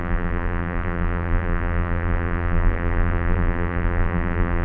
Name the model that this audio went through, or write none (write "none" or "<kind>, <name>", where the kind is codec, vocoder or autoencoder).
vocoder, BigVGAN v2